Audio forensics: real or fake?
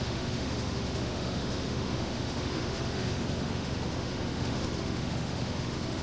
fake